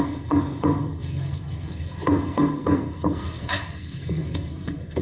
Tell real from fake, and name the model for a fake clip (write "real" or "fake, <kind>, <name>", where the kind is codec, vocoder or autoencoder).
fake, codec, SNAC